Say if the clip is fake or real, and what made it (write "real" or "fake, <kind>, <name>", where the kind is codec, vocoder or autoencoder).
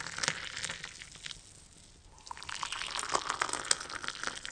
real